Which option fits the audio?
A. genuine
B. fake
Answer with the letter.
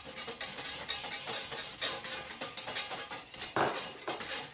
A